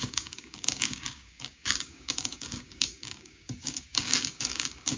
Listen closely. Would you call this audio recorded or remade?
remade